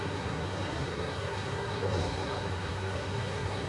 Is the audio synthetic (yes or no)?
yes